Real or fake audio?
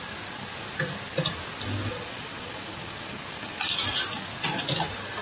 real